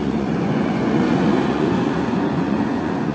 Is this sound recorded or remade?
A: remade